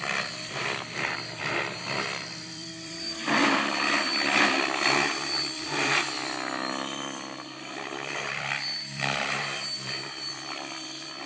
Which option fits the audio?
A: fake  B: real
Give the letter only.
A